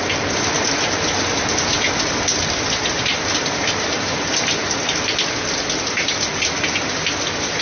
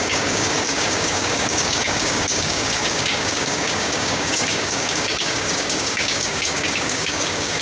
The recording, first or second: first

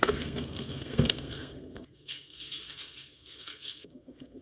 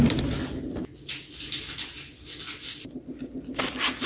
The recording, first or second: second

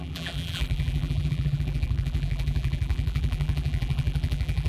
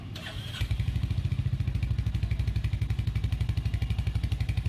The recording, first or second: second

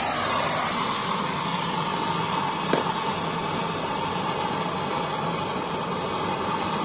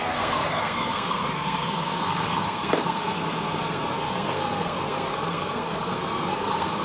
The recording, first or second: first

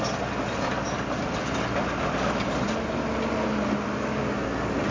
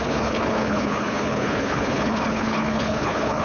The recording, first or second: first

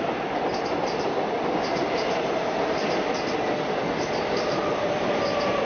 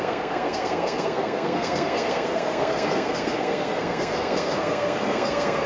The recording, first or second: first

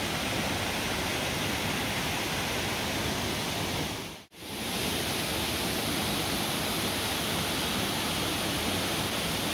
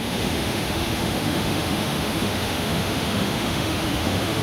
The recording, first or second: first